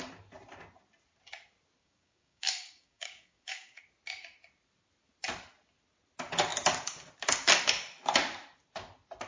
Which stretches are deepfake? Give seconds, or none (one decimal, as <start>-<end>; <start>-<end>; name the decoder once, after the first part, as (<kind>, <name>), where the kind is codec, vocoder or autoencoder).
1.8-3.8 (codec, DAC)